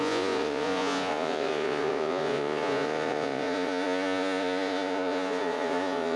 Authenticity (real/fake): fake